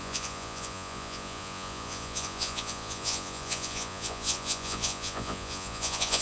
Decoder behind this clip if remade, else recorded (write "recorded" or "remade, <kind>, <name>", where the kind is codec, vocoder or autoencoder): remade, vocoder, Vocos